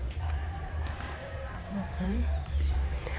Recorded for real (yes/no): no